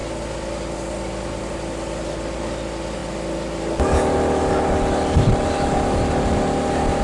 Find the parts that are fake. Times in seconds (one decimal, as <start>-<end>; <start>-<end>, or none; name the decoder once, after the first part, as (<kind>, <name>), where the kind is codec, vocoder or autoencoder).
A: none